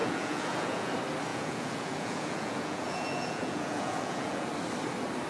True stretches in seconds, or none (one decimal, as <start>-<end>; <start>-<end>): 0.9-1.3; 4.5-5.3